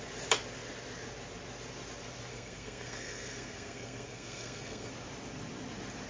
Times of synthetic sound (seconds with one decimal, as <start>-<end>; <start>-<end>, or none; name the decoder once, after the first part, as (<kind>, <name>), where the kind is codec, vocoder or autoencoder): 2.3-4.9 (codec, SNAC)